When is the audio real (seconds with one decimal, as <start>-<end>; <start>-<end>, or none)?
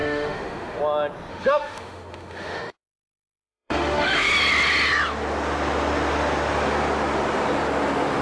0.8-1.3; 4.3-8.2